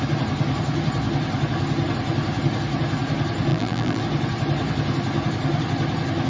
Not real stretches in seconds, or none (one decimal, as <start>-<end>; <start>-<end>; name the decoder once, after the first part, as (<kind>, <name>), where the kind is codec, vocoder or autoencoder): 3.5-4.0 (vocoder, BigVGAN v2)